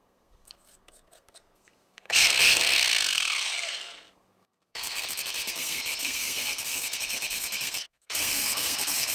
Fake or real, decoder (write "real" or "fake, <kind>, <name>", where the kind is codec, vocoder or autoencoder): fake, codec, SNAC